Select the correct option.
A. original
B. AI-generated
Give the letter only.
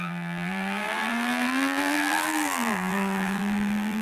B